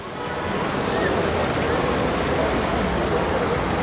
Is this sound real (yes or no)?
yes